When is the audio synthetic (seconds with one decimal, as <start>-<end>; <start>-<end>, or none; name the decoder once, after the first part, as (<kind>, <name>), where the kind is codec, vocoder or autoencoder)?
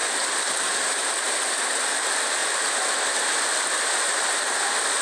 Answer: none